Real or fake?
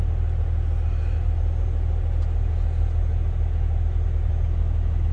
real